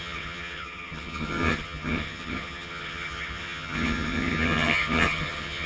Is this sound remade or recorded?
remade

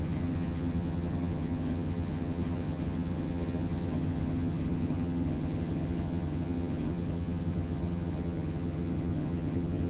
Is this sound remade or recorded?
remade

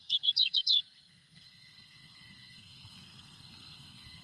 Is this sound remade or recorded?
remade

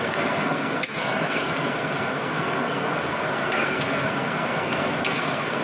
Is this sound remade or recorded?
remade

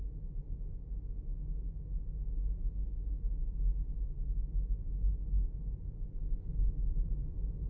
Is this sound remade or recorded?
recorded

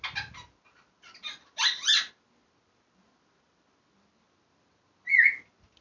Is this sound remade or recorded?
recorded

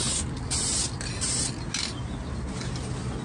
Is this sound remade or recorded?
recorded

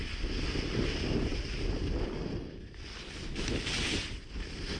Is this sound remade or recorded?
recorded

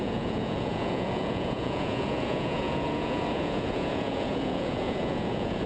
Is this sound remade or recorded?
remade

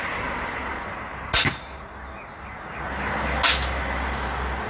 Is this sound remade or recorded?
recorded